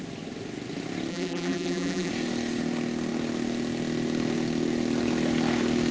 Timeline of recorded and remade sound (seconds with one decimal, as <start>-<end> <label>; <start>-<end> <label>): 0.0-1.1 recorded; 1.1-2.1 remade; 2.1-5.9 recorded